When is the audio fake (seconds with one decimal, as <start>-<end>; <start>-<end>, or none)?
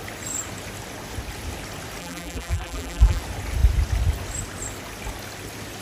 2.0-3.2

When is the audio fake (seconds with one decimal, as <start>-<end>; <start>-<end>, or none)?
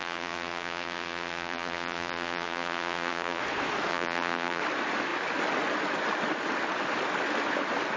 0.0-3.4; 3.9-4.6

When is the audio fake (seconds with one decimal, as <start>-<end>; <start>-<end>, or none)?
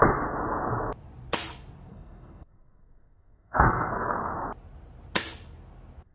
1.9-4.2